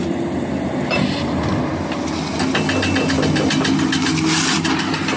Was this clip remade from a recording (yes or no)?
no